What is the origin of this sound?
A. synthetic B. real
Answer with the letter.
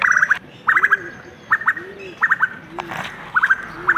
B